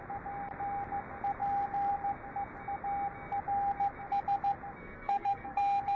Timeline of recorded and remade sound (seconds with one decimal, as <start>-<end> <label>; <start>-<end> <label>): 0.0-4.8 recorded; 4.8-5.6 remade; 5.6-6.0 recorded